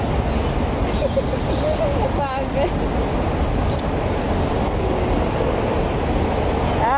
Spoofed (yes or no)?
no